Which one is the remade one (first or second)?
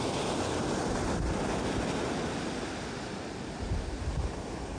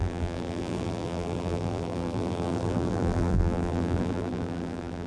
second